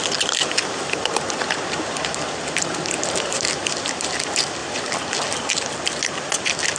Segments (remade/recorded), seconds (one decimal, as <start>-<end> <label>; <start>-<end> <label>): 0.0-6.8 recorded